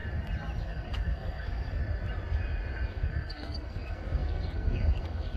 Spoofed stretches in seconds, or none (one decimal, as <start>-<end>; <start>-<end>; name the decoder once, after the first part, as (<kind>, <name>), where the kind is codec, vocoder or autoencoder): 0.6-1.8 (codec, SNAC); 2.9-5.4